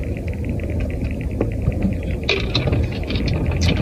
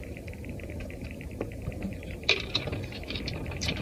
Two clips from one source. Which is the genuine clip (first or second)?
first